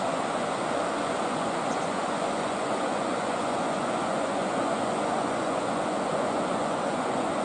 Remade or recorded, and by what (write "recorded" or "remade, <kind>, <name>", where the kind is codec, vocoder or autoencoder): remade, vocoder, Vocos